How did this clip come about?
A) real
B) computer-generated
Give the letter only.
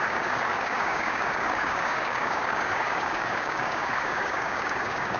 B